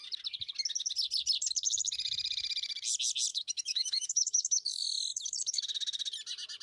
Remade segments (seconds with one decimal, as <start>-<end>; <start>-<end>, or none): 3.3-5.6

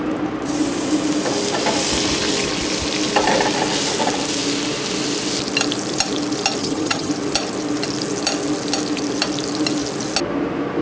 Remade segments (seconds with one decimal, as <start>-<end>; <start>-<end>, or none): 6.6-7.1

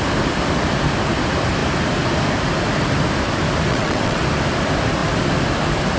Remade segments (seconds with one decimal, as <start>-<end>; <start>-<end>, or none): 3.7-4.2

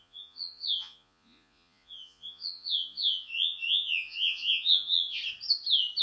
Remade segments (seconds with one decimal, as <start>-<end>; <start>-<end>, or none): 0.0-5.2

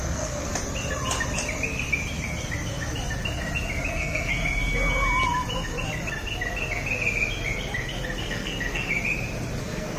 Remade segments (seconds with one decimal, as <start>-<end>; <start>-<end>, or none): 0.0-0.5; 3.9-4.3; 8.2-8.9; 9.6-10.0

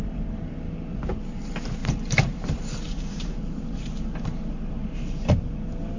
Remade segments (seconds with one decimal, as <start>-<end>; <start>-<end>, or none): 1.8-5.3

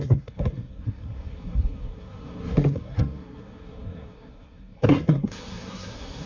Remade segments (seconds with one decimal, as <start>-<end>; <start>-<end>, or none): 0.0-6.3

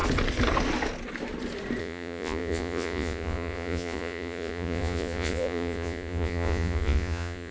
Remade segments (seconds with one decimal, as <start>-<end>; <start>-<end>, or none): 1.8-7.5